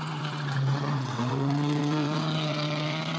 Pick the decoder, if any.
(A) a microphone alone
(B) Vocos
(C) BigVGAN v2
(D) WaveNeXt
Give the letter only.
D